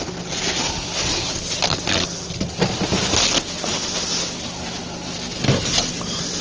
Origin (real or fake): real